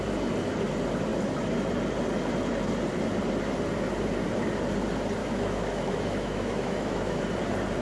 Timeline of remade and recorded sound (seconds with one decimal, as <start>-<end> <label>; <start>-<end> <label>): 0.0-5.2 recorded; 5.2-7.2 remade; 7.2-7.8 recorded